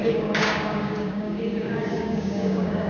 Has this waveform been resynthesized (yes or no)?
yes